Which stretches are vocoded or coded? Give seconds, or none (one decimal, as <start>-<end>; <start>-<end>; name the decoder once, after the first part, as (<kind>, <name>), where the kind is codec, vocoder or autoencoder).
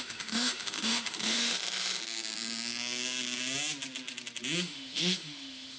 0.0-2.0 (autoencoder, DAC-VAE); 4.6-5.8